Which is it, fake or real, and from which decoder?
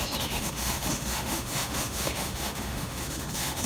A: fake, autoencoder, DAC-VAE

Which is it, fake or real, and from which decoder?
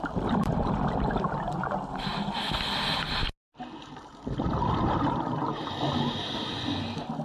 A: real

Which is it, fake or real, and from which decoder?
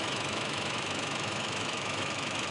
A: fake, autoencoder, DAC-VAE